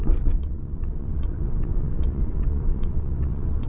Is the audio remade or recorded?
remade